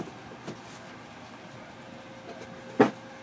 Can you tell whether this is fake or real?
real